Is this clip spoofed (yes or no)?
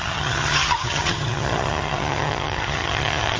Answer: yes